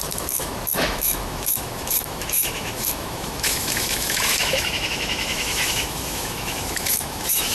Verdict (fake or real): fake